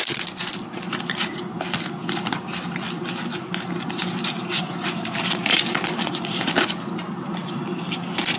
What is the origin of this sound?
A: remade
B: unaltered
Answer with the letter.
B